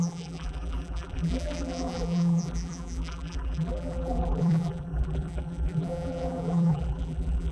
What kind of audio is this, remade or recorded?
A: remade